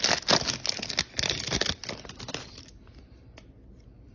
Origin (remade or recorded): recorded